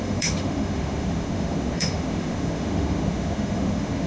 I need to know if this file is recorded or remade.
remade